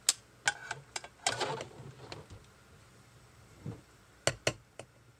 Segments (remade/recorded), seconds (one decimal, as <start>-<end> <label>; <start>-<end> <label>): 0.0-2.9 recorded; 2.9-4.1 remade; 4.1-4.5 recorded; 4.5-5.2 remade